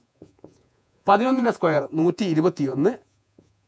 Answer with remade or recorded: remade